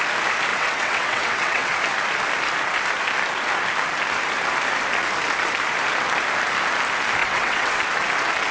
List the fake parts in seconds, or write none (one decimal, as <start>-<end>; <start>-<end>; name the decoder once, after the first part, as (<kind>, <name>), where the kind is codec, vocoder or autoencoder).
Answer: 0.5-1.8 (vocoder, WaveNeXt); 7.2-7.8